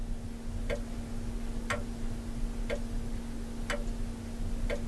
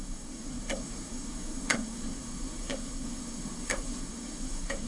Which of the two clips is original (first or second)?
first